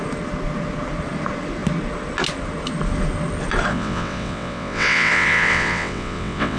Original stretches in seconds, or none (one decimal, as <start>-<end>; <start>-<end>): 0.0-3.7